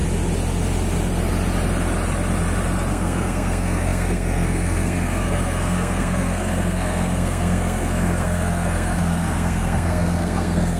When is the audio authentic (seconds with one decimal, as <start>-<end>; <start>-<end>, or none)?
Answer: 0.0-2.9